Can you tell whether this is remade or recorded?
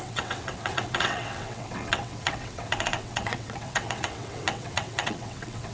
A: remade